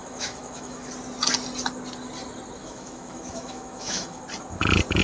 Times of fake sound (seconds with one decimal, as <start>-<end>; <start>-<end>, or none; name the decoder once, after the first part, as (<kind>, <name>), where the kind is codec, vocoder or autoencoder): 0.0-0.9 (autoencoder, DAC-VAE); 2.6-4.2